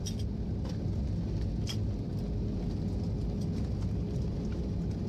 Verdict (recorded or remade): recorded